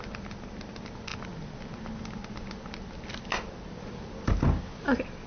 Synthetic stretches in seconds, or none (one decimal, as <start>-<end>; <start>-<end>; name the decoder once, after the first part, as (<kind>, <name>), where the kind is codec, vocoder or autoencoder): none